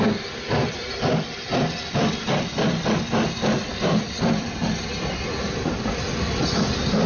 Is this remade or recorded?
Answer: recorded